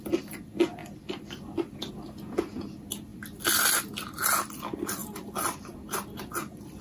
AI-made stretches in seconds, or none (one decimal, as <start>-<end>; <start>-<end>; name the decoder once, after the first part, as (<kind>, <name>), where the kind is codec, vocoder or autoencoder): 5.0-6.3 (vocoder, BigVGAN v2)